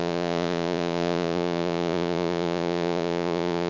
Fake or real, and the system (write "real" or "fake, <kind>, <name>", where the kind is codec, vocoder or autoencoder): fake, vocoder, Vocos